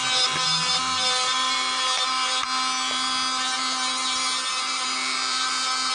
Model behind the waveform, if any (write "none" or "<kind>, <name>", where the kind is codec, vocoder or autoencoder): vocoder, BigVGAN v2